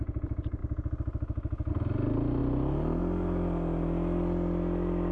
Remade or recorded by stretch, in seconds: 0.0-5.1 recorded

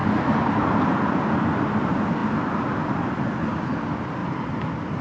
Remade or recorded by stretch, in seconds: 0.0-1.0 remade; 1.0-4.2 recorded; 4.2-5.0 remade

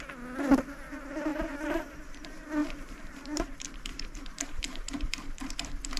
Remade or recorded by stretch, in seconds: 0.0-1.3 recorded; 1.3-1.9 remade; 1.9-2.6 recorded; 2.6-5.5 remade; 5.5-6.0 recorded

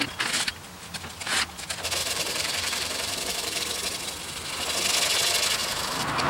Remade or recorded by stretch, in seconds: 0.0-2.0 recorded; 2.0-3.6 remade; 3.6-5.6 recorded; 5.6-6.3 remade